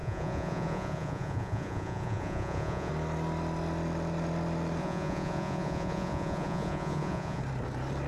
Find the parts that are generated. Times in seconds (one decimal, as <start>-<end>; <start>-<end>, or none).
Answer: 0.0-2.9; 4.8-7.4